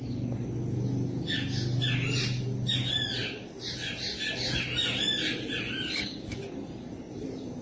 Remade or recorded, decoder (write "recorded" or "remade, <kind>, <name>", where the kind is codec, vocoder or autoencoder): recorded